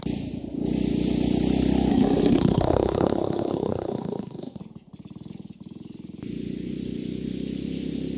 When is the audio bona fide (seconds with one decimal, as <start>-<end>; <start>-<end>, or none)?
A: 0.0-1.9; 4.6-8.2